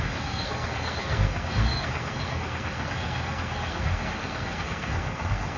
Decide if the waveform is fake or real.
fake